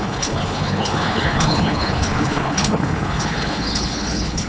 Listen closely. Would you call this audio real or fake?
fake